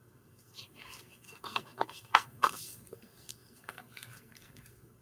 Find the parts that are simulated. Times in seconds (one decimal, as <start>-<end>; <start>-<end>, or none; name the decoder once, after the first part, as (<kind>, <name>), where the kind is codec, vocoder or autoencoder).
0.0-5.0 (codec, SNAC)